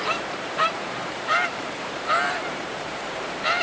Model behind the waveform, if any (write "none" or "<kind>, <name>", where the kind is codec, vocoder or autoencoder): vocoder, BigVGAN v2